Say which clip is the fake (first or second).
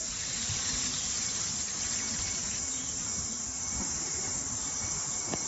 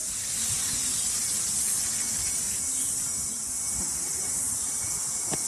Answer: first